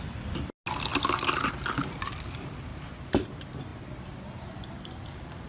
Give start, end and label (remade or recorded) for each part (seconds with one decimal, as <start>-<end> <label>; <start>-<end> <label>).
0.0-5.5 recorded